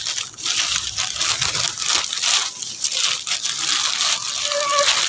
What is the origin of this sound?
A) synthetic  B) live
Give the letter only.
B